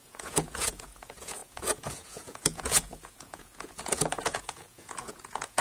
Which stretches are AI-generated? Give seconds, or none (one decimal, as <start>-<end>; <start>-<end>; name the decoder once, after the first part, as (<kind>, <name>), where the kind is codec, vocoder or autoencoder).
0.0-5.6 (vocoder, Vocos)